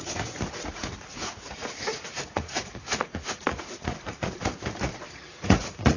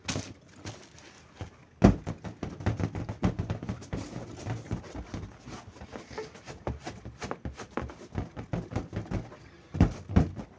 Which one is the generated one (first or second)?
first